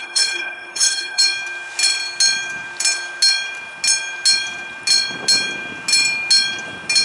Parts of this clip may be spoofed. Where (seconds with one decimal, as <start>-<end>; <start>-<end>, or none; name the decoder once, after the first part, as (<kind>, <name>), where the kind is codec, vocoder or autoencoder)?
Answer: 0.0-1.2 (codec, HILCodec)